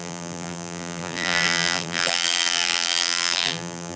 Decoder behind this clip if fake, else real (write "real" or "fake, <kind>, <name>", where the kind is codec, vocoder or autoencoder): fake, vocoder, BigVGAN v2